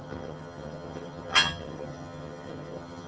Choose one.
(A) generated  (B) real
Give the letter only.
A